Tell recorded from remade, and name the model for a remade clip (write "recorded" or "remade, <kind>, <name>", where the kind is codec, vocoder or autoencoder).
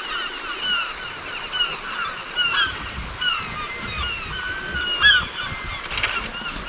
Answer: recorded